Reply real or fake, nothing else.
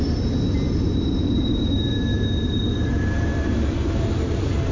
fake